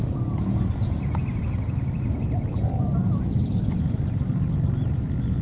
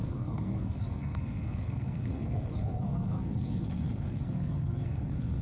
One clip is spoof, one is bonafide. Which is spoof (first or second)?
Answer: second